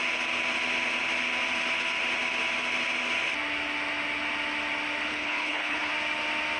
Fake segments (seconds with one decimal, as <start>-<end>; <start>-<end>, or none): 5.1-5.9